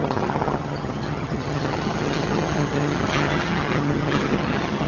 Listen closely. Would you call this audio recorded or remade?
remade